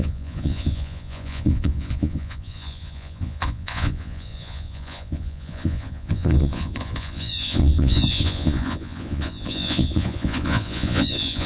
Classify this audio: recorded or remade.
remade